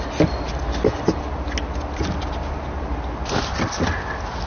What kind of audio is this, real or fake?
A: real